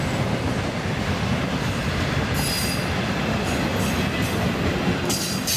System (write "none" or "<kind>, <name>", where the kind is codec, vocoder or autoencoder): none